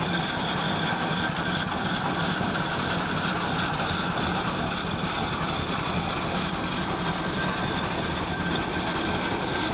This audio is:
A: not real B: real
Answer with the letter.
B